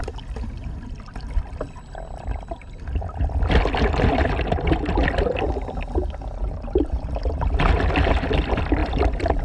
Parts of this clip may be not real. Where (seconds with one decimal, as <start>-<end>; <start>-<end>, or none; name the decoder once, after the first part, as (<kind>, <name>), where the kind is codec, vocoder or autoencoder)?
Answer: 8.8-9.4 (vocoder, BigVGAN v2)